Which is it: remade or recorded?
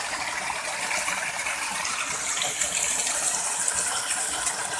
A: recorded